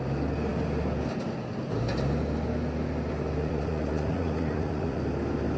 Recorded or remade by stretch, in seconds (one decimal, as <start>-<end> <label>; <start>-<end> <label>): 0.0-3.4 recorded; 3.4-5.0 remade; 5.0-5.6 recorded